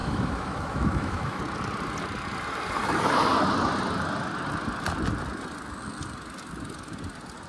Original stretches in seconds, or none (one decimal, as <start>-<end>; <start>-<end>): 1.4-7.5